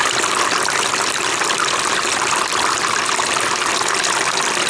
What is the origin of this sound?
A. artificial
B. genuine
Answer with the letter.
B